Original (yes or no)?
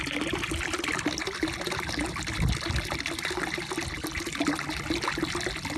yes